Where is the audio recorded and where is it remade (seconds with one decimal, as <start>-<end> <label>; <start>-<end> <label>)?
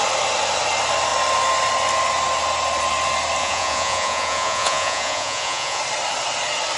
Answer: 0.0-3.4 recorded; 3.4-5.8 remade; 5.8-6.8 recorded